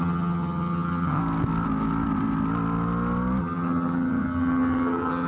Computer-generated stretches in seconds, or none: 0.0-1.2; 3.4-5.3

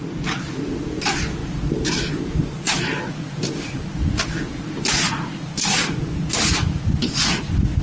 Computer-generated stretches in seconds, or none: none

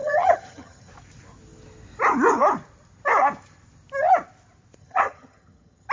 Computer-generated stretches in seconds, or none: 0.0-0.9; 4.8-5.9

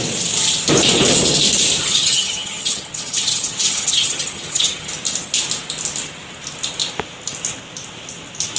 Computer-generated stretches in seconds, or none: 1.8-4.9

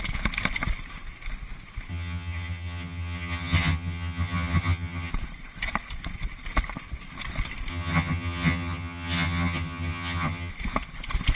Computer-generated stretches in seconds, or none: 1.9-5.1; 7.7-10.5

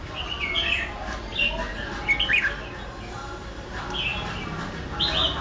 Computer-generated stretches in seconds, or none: none